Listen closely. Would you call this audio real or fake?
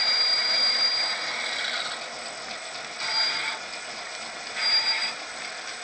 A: real